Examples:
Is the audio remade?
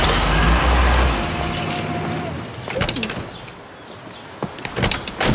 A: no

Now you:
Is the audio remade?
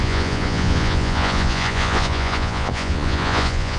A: yes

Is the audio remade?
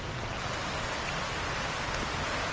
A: no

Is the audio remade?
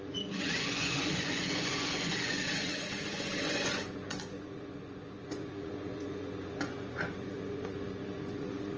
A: yes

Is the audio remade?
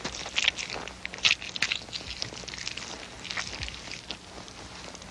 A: no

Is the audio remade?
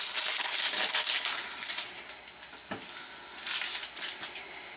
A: no